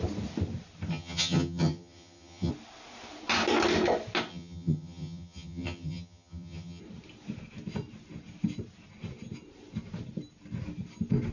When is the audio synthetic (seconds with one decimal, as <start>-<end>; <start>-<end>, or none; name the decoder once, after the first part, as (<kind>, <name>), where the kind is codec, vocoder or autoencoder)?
0.9-2.5 (vocoder, HiFi-GAN); 4.3-6.8